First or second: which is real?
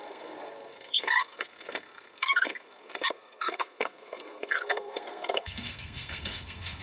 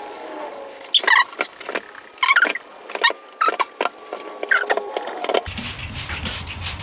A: second